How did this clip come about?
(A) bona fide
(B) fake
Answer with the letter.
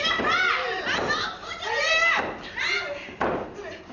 A